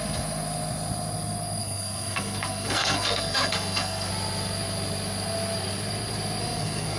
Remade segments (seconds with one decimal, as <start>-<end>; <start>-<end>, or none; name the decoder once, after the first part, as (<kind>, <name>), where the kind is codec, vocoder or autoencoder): 1.6-4.1 (codec, SNAC); 6.4-7.0